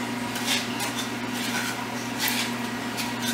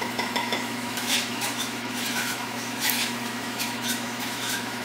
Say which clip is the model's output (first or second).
second